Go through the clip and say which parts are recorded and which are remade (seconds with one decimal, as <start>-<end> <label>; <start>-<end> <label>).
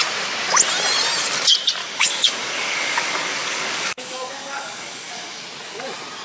0.0-1.8 recorded; 1.8-5.4 remade; 5.4-6.2 recorded